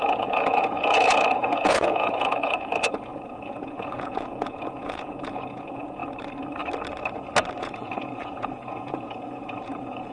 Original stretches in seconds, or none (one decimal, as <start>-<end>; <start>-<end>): 6.0-7.6